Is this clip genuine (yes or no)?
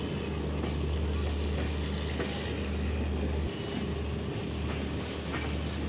yes